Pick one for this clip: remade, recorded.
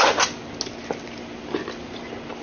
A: recorded